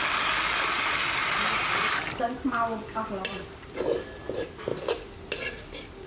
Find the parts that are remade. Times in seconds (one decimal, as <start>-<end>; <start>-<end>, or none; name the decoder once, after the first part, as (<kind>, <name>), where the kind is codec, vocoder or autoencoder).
4.7-5.6 (vocoder, BigVGAN v2)